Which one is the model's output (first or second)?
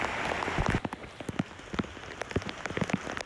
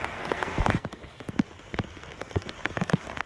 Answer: second